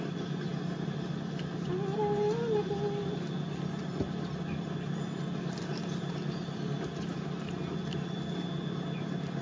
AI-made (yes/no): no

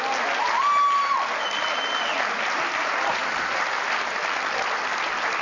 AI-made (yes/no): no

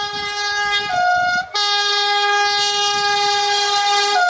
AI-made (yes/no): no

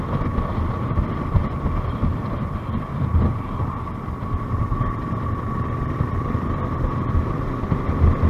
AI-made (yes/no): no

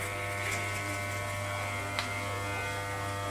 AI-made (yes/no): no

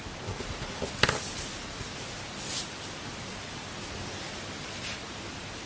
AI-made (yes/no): no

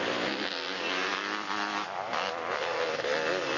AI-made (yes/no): no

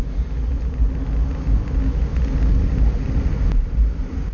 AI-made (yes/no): no